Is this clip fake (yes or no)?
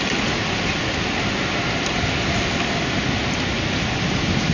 no